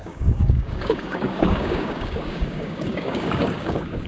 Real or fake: fake